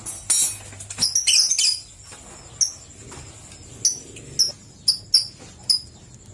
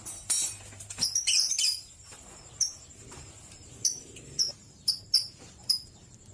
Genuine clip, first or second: first